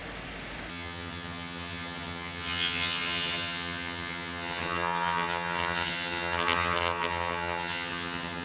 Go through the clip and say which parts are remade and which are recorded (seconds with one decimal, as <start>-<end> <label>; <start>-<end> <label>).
0.0-0.7 recorded; 0.7-8.4 remade